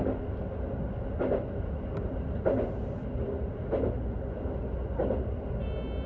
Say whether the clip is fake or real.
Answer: real